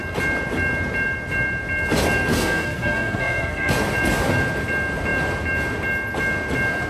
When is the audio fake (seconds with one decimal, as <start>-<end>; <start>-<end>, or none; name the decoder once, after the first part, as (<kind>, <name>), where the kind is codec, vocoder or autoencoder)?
2.3-3.7 (codec, SNAC)